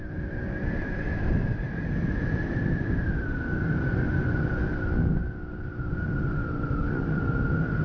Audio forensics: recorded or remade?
recorded